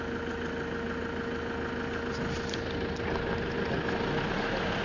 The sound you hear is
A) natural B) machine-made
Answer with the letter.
A